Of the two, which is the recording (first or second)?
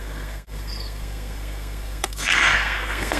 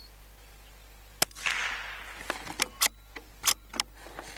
second